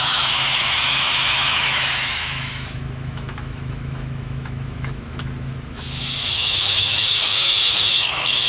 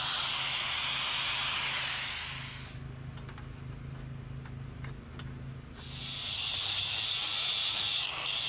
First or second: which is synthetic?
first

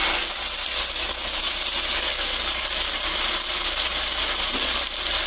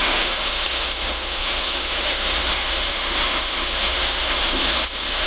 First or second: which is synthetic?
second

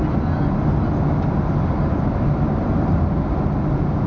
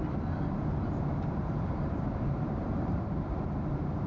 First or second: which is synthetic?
second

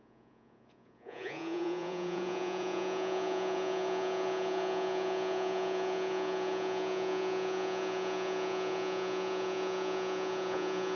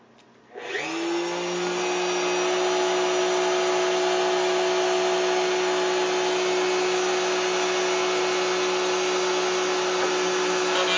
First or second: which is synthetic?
first